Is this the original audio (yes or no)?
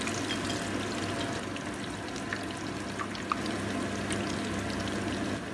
yes